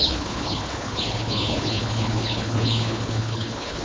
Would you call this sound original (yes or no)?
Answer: no